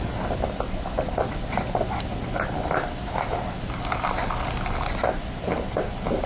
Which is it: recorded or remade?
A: recorded